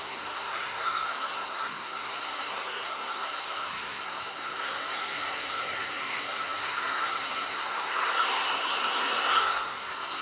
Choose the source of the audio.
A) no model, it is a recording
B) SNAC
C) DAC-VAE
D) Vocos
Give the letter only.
B